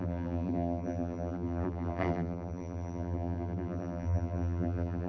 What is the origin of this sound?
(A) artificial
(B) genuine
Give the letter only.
A